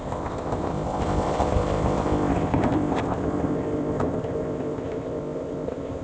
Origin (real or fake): fake